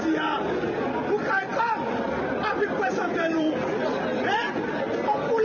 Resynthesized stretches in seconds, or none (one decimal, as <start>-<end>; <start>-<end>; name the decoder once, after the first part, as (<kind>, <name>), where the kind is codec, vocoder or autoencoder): 1.5-4.7 (vocoder, BigVGAN v2)